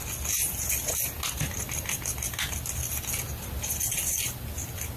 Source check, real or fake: real